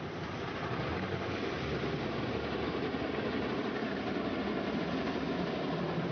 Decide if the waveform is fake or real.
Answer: real